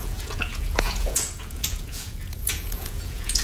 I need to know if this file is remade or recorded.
remade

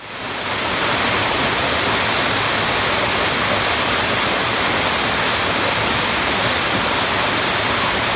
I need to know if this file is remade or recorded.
recorded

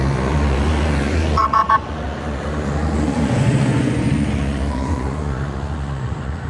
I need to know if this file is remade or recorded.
remade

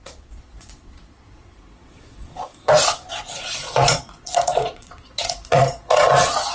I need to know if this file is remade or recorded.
remade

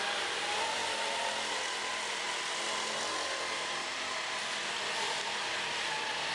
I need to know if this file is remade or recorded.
recorded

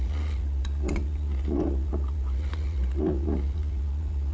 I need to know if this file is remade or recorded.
remade